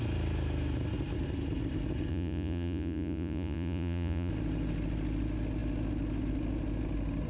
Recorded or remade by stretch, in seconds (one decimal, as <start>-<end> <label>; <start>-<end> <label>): 0.0-2.1 recorded; 2.1-4.3 remade; 4.3-7.3 recorded